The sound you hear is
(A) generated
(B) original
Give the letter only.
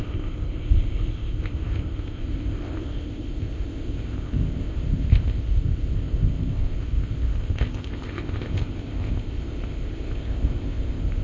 A